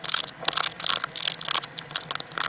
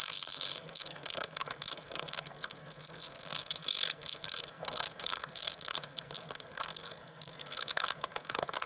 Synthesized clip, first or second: second